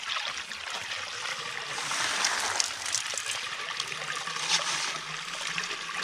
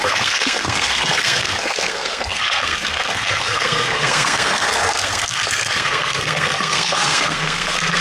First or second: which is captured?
first